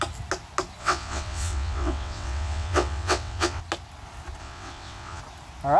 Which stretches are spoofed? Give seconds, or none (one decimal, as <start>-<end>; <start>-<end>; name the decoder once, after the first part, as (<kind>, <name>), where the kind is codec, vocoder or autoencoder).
0.8-3.6 (vocoder, WaveNeXt); 4.4-5.2